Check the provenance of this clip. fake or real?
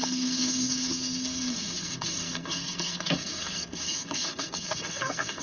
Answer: fake